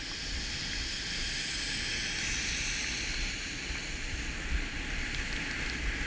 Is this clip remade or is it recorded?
recorded